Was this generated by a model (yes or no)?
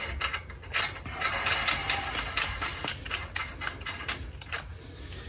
no